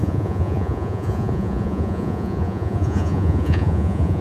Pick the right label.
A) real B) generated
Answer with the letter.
B